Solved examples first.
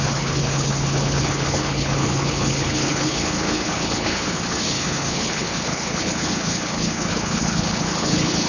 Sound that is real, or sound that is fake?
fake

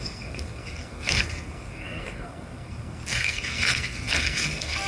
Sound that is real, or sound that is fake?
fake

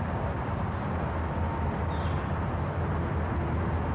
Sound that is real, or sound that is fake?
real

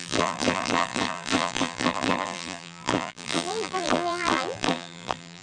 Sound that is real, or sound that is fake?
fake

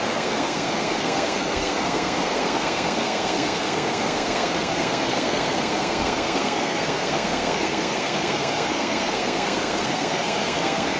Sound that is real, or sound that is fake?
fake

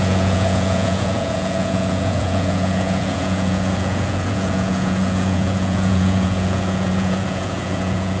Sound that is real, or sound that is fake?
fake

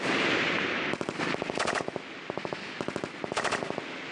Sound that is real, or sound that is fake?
real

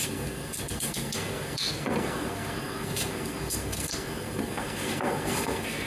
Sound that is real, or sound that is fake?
fake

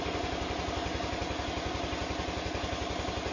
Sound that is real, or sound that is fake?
real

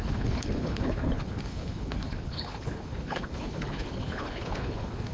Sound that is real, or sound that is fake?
fake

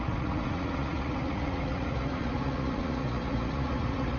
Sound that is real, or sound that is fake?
fake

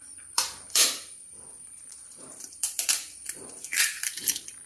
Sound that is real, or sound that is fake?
fake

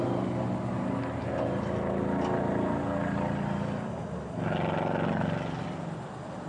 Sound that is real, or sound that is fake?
real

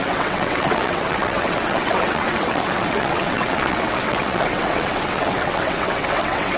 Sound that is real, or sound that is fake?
fake